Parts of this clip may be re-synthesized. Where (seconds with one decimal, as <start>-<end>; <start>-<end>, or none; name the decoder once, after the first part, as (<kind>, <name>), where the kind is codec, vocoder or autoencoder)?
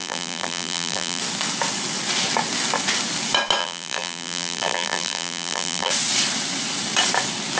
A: 0.0-1.2 (vocoder, BigVGAN v2); 3.6-5.9